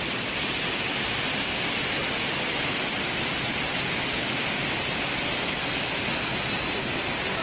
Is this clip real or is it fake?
real